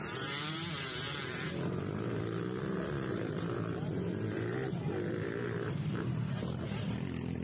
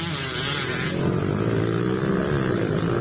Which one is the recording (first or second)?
second